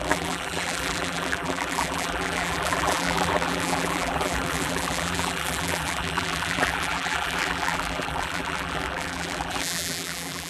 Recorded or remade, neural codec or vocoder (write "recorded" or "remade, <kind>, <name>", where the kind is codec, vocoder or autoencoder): remade, vocoder, BigVGAN v2